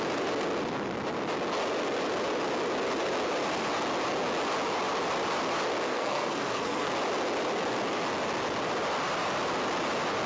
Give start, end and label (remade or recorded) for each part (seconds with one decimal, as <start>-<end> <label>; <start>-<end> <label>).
0.0-5.9 recorded; 5.9-6.9 remade; 6.9-10.3 recorded